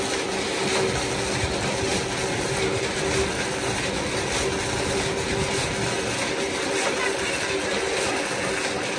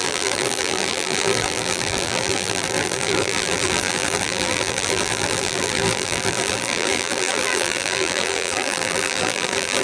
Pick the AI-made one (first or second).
second